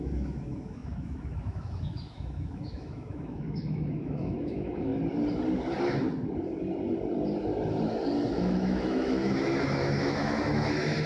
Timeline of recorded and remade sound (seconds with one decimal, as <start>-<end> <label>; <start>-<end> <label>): 0.0-4.9 remade; 4.9-8.3 recorded; 8.3-11.1 remade